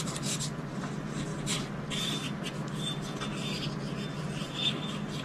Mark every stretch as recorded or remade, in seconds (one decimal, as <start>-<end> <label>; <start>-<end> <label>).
0.0-5.2 recorded